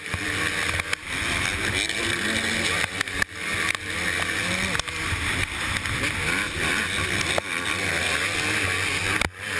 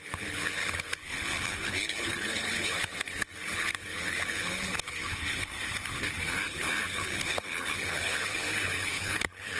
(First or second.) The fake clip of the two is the second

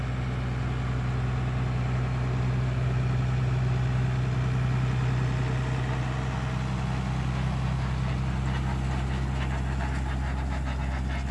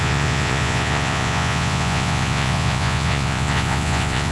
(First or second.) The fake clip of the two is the second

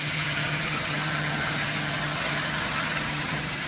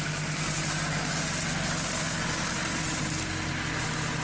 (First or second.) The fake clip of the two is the first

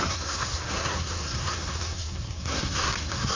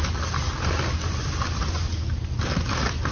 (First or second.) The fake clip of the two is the first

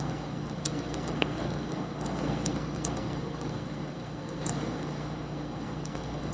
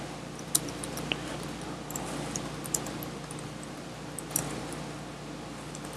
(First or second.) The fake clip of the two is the first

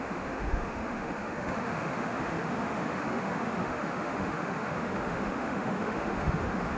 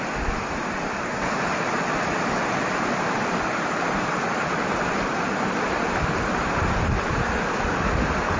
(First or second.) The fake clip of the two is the first